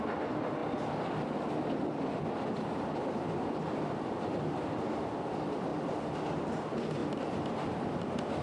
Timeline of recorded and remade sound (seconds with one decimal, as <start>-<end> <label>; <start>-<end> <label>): 0.0-0.6 remade; 0.6-2.1 recorded; 2.1-5.7 remade; 5.7-6.5 recorded; 6.5-7.0 remade; 7.0-8.4 recorded